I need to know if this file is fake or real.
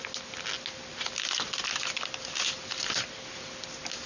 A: real